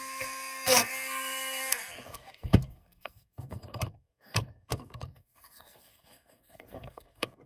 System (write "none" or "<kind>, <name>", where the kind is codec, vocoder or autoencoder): codec, SNAC